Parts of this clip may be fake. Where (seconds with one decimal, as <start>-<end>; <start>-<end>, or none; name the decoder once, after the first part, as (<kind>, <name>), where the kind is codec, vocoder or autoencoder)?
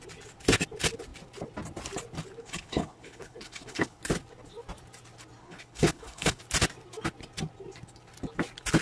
2.4-4.0 (codec, HILCodec); 5.4-6.4